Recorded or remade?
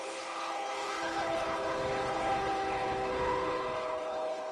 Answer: remade